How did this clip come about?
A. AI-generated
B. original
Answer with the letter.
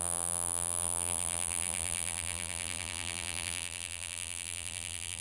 A